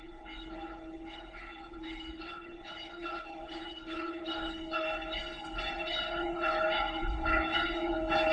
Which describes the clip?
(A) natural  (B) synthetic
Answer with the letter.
B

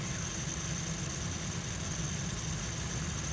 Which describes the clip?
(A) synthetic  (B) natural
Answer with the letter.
B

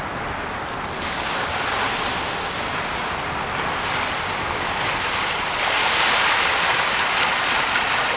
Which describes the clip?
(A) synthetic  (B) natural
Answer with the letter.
B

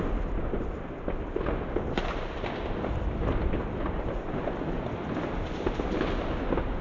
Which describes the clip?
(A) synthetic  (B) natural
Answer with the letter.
B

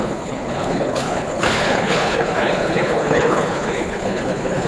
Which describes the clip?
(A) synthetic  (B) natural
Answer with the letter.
A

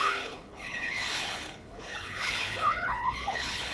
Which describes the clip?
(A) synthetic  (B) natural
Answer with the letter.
A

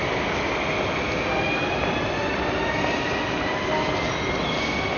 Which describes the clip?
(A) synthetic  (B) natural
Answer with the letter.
B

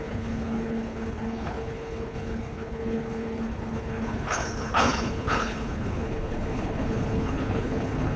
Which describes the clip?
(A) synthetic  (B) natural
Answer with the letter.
A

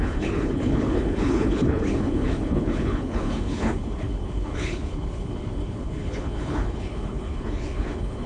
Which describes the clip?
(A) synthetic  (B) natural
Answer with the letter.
A